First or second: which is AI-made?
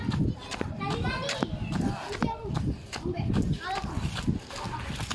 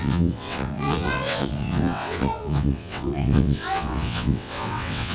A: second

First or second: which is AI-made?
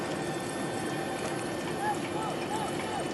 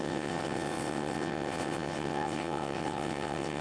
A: second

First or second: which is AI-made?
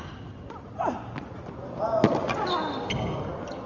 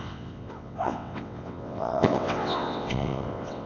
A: second